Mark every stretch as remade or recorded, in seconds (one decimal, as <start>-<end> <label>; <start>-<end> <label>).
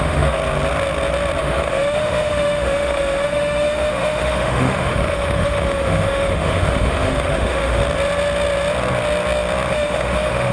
0.0-0.4 remade; 0.4-1.4 recorded; 1.4-7.8 remade; 7.8-9.7 recorded; 9.7-10.5 remade